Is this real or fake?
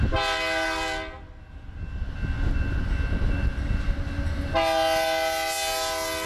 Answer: real